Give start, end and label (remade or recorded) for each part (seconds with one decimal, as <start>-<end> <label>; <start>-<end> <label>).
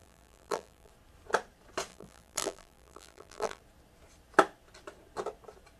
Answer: 0.0-0.9 remade; 0.9-1.9 recorded; 1.9-3.6 remade; 3.6-5.8 recorded